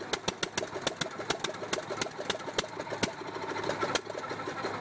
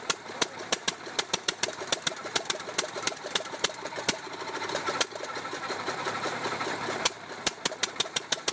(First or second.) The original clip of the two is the first